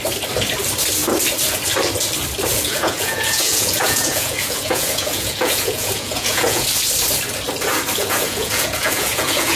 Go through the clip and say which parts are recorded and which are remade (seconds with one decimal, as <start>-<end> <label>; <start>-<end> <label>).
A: 0.0-2.5 recorded; 2.5-6.7 remade; 6.7-8.0 recorded; 8.0-9.6 remade